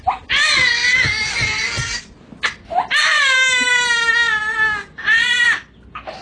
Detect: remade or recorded recorded